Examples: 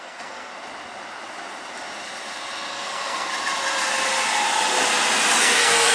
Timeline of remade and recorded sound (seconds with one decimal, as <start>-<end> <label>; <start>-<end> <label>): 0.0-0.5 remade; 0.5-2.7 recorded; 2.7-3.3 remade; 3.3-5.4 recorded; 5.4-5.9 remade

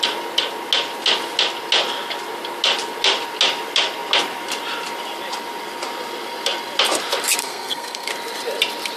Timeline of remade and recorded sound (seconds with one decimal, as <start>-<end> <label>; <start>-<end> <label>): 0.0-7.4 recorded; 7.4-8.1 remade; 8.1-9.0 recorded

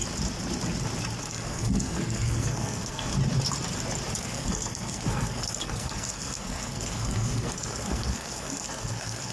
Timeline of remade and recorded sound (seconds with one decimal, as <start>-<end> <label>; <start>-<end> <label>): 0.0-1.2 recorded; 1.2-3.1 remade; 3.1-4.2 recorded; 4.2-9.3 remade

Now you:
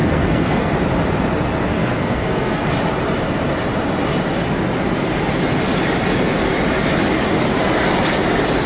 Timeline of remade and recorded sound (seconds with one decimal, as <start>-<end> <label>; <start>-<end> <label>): 0.0-0.7 remade; 0.7-1.7 recorded; 1.7-2.6 remade; 2.6-8.7 recorded

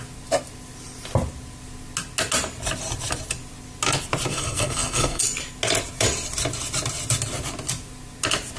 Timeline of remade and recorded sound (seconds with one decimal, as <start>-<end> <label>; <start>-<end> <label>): 0.0-4.3 recorded; 4.3-5.2 remade; 5.2-8.6 recorded

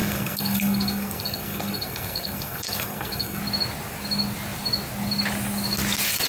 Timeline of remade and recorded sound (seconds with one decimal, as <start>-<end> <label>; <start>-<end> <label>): 0.0-3.4 remade; 3.4-6.3 recorded

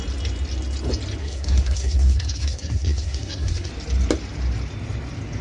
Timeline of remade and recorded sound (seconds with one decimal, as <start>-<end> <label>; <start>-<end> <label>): 0.0-1.2 recorded; 1.2-3.7 remade; 3.7-5.4 recorded

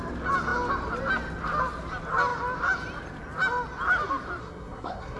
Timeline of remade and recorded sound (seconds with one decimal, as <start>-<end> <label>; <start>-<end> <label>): 0.0-4.4 recorded; 4.4-5.2 remade